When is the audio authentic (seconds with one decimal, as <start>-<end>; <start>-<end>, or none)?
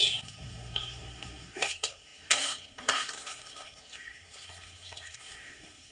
none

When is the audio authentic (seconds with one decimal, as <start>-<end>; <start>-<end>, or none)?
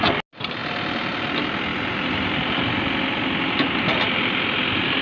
0.0-5.0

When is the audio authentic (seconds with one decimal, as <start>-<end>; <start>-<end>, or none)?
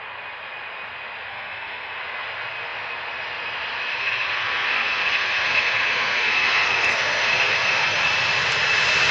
0.0-1.3; 2.0-3.9; 8.0-9.1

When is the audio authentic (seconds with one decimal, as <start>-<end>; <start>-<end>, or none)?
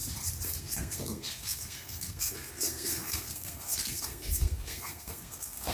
0.0-0.6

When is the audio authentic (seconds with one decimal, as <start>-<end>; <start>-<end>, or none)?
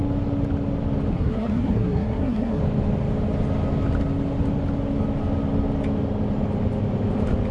0.0-1.1; 2.6-7.5